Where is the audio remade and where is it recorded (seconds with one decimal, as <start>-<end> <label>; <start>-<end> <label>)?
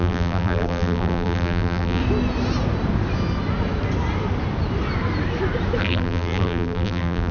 0.0-2.0 remade; 2.0-5.8 recorded; 5.8-7.3 remade